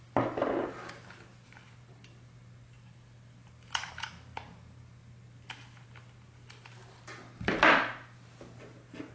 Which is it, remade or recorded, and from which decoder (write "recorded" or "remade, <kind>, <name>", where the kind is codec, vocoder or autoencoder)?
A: recorded